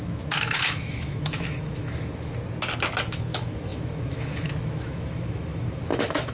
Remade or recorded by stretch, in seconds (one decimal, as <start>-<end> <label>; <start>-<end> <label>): 0.0-2.3 remade; 2.3-3.1 recorded; 3.1-6.3 remade